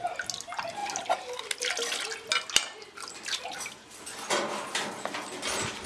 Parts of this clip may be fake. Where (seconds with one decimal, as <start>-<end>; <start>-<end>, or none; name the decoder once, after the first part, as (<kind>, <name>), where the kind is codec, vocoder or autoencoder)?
none